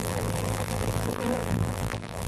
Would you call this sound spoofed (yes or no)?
yes